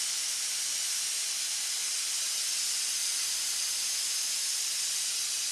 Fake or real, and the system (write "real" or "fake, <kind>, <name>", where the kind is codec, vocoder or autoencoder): real